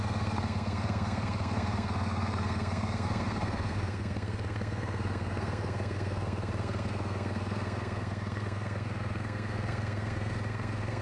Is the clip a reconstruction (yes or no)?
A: yes